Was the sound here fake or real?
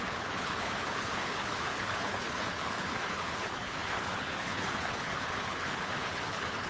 fake